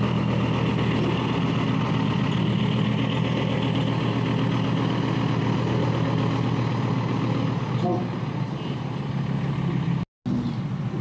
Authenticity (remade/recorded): recorded